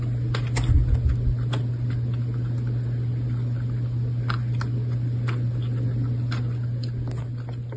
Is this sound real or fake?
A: real